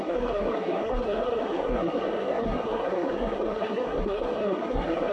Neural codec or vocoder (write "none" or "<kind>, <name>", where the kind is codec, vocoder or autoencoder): codec, SNAC